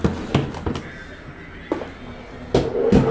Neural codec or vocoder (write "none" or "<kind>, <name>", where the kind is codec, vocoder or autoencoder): none